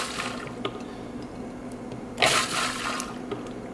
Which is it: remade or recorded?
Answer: recorded